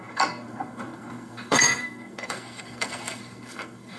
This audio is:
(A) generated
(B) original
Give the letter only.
A